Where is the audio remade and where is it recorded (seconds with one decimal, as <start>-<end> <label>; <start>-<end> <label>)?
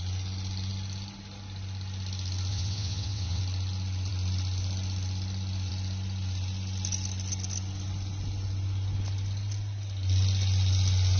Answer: 0.0-2.5 recorded; 2.5-3.4 remade; 3.4-11.2 recorded